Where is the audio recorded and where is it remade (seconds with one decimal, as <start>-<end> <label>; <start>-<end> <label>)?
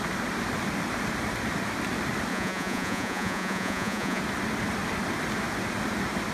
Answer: 0.0-2.3 recorded; 2.3-4.2 remade; 4.2-6.3 recorded